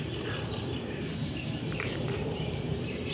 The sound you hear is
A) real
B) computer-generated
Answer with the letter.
B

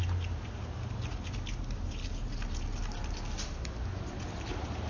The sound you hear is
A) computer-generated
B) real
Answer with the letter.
B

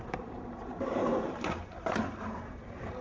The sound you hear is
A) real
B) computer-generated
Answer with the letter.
B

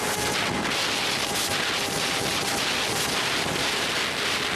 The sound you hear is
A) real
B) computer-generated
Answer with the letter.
A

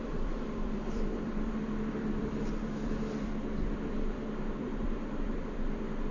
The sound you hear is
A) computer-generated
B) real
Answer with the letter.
A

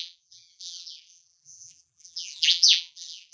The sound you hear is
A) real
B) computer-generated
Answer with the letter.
B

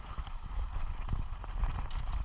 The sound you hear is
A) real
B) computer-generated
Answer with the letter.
A